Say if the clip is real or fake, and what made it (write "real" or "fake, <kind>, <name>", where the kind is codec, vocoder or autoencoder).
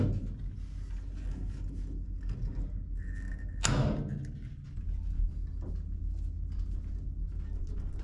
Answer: real